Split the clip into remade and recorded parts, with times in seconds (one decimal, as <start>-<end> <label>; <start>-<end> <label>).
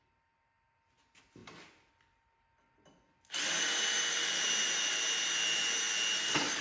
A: 0.0-6.6 recorded